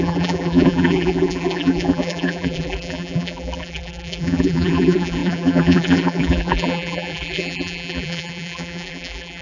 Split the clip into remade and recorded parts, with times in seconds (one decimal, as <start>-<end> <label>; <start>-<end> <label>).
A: 0.0-9.4 remade

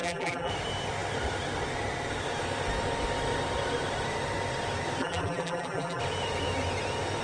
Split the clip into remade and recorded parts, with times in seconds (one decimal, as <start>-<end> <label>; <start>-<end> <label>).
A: 0.0-0.5 remade; 0.5-5.0 recorded; 5.0-6.0 remade; 6.0-7.2 recorded

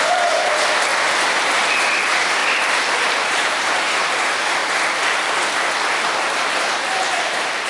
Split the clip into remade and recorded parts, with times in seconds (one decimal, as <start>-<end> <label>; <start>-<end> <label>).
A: 0.0-0.9 remade; 0.9-1.8 recorded; 1.8-2.4 remade; 2.4-3.3 recorded; 3.3-4.6 remade; 4.6-6.0 recorded; 6.0-7.7 remade

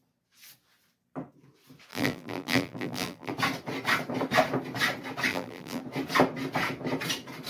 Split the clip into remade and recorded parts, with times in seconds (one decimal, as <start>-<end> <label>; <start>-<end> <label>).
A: 0.0-1.9 recorded; 1.9-3.3 remade; 3.3-5.3 recorded; 5.3-5.8 remade; 5.8-7.5 recorded

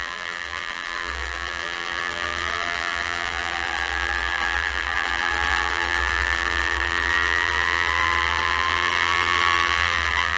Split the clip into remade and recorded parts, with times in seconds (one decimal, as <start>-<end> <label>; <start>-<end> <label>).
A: 0.0-10.4 remade

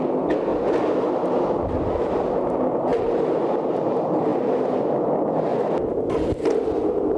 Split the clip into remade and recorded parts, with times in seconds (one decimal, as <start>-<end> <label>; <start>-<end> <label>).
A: 0.0-7.2 recorded

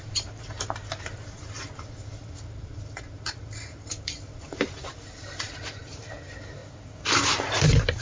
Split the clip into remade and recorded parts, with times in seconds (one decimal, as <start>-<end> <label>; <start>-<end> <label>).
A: 0.0-6.6 remade; 6.6-7.2 recorded; 7.2-8.0 remade